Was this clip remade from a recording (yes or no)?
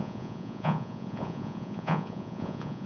yes